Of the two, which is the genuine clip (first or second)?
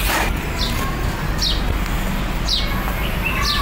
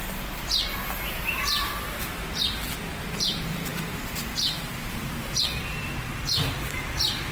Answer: first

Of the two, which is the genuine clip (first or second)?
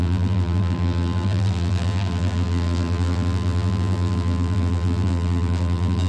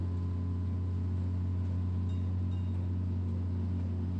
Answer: second